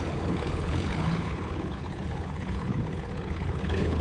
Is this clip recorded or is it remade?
remade